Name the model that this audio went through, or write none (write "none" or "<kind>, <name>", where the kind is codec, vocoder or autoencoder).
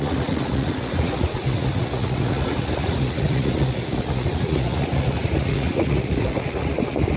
vocoder, Vocos